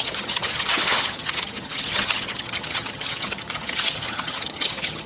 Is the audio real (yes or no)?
no